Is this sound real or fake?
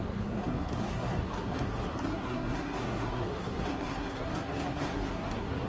fake